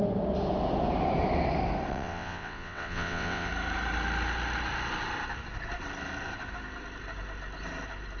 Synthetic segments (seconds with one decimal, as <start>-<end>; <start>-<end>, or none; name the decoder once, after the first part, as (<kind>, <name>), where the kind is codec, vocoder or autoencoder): 1.9-3.5 (vocoder, WaveNeXt)